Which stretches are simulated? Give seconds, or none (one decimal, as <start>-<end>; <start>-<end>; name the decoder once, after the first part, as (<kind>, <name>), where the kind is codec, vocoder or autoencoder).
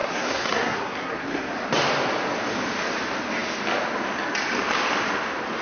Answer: 0.0-1.5 (codec, SNAC)